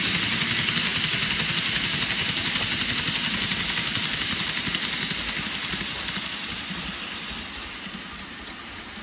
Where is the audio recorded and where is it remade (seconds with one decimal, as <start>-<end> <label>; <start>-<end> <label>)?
0.0-9.0 recorded